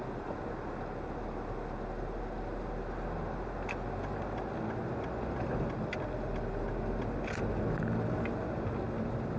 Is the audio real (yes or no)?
yes